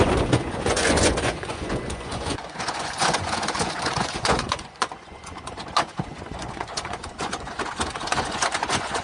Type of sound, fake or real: fake